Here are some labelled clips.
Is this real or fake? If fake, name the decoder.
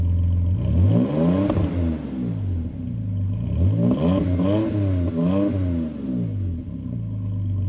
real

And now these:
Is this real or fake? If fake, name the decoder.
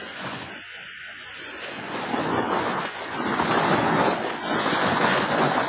fake, vocoder, Vocos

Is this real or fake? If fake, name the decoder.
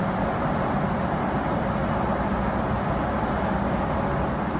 real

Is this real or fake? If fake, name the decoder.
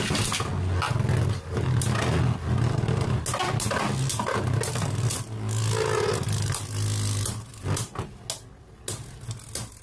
real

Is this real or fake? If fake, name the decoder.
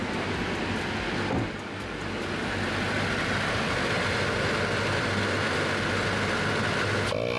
real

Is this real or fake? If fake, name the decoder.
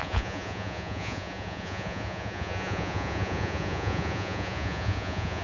fake, vocoder, Vocos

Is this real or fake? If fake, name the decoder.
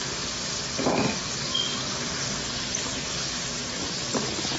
real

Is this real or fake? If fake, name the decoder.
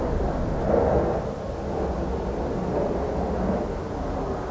real